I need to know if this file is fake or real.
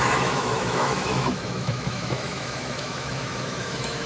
fake